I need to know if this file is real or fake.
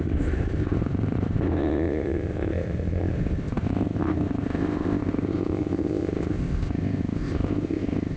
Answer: fake